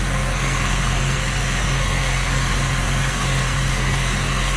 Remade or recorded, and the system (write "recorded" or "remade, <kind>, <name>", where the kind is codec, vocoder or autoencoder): remade, codec, SNAC